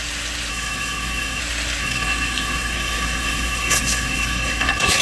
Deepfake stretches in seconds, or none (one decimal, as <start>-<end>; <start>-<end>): 0.5-1.4; 1.8-5.0